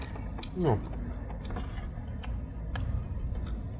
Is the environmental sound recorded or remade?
recorded